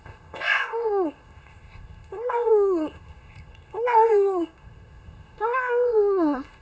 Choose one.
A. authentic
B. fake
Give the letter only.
B